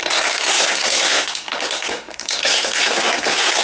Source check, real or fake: fake